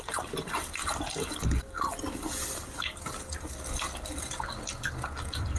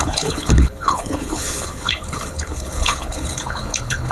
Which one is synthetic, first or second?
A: second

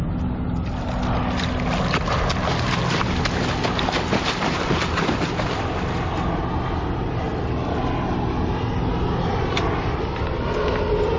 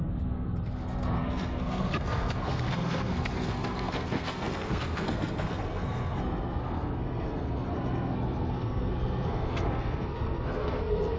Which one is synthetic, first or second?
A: second